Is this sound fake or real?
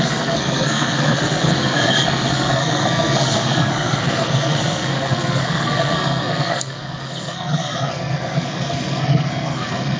fake